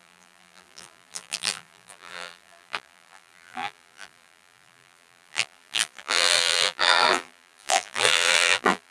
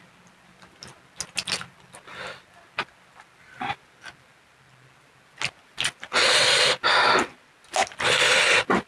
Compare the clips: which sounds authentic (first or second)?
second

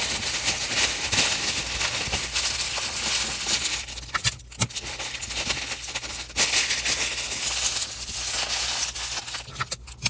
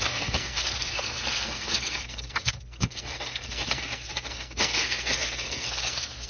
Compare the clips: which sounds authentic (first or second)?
first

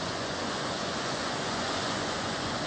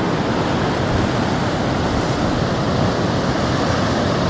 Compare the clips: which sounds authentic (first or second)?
second